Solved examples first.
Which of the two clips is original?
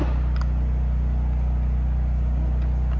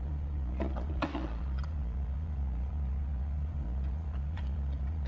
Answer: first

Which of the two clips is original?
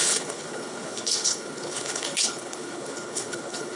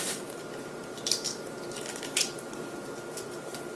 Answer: second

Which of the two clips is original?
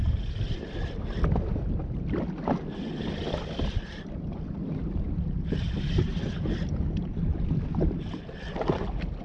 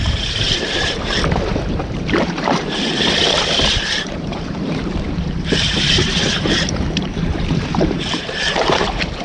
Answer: first